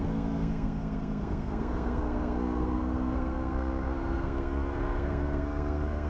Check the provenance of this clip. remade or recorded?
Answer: remade